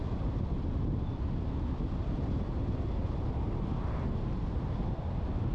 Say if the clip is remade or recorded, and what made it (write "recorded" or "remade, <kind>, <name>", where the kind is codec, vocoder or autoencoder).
recorded